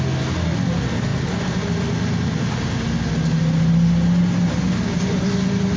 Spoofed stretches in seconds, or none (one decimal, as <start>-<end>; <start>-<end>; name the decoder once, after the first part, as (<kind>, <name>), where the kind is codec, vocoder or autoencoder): none